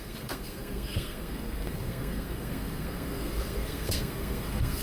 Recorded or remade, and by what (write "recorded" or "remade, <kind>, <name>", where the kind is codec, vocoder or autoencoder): remade, codec, SNAC